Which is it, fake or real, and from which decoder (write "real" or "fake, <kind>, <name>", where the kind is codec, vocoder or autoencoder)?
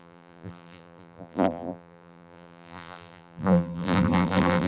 fake, vocoder, BigVGAN v2